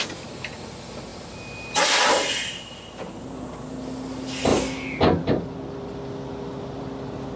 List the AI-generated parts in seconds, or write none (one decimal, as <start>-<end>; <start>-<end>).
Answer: none